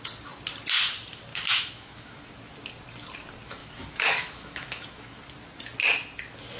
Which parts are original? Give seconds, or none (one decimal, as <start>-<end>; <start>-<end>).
0.0-1.3; 2.3-3.6; 5.2-6.6